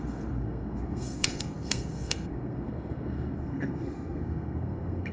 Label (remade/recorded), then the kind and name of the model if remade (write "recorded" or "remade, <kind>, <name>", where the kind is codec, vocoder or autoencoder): remade, codec, SNAC